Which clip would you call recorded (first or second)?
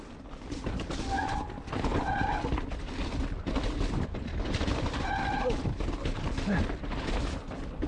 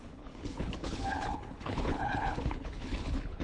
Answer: first